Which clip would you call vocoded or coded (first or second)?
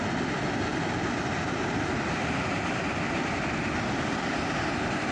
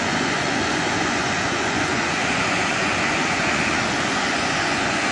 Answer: second